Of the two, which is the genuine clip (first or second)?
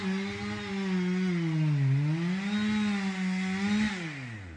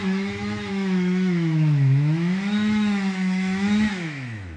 first